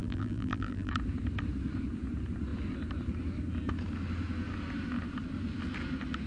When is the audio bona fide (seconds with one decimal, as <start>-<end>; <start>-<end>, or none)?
0.9-6.3